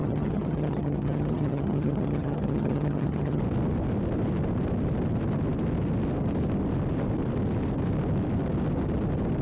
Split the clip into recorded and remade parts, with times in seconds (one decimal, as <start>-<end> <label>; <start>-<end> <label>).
0.0-3.4 remade; 3.4-9.4 recorded